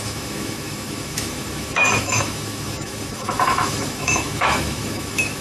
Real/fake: fake